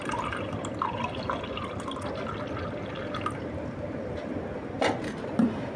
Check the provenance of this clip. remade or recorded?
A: recorded